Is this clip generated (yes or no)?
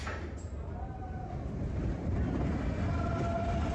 no